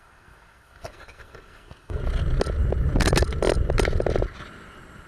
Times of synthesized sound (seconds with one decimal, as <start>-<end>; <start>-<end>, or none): 0.0-2.0